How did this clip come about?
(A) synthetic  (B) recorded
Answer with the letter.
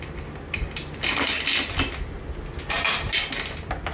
B